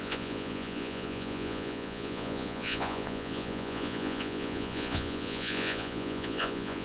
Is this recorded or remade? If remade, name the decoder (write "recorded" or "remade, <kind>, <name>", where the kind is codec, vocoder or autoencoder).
remade, vocoder, Vocos